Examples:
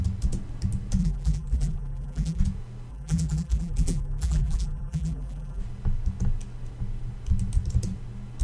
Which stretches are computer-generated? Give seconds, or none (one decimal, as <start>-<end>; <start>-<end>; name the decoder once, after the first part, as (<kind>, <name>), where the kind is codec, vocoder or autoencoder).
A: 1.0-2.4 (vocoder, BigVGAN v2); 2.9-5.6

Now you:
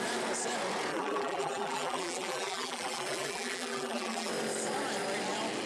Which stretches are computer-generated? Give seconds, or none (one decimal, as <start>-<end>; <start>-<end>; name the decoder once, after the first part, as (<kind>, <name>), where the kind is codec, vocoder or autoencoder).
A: 0.9-4.3 (vocoder, BigVGAN v2)

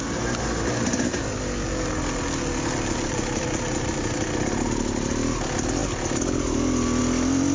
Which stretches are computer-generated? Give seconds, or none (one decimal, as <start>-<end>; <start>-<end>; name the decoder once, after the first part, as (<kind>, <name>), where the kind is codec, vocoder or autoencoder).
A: none

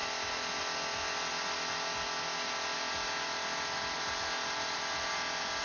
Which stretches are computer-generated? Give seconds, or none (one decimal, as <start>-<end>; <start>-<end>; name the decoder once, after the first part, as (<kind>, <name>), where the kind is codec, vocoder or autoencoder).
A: none

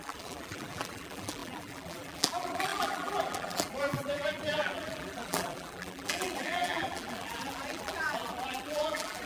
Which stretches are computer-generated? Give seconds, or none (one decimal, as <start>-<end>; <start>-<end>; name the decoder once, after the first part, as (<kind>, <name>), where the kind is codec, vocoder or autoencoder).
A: 0.0-9.3 (vocoder, BigVGAN v2)

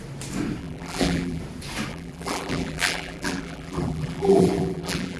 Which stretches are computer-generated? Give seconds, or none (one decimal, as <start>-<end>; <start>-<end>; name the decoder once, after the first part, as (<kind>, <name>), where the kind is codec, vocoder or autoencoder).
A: 0.6-1.4 (vocoder, BigVGAN v2); 1.9-5.2

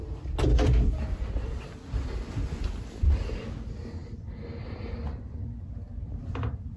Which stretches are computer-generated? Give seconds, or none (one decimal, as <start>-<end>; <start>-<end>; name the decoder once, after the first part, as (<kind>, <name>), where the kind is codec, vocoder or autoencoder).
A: none

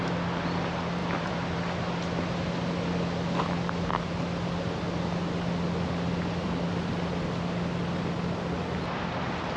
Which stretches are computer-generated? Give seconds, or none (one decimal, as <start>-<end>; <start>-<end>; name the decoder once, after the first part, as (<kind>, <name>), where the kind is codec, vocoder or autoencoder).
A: 1.0-1.6 (vocoder, BigVGAN v2)